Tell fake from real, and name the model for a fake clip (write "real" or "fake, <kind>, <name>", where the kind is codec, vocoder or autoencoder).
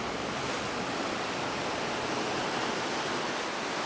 fake, vocoder, BigVGAN v2